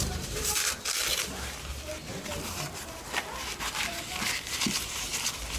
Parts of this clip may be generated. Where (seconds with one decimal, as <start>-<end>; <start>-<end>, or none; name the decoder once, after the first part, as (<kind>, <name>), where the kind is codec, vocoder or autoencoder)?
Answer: 0.0-0.7 (vocoder, BigVGAN v2); 1.1-1.8